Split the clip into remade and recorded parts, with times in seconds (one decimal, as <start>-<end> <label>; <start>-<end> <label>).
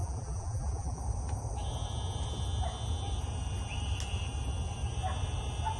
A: 0.0-1.0 remade; 1.0-5.8 recorded